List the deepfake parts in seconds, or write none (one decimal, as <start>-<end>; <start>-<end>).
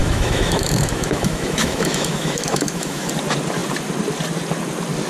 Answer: 0.0-3.1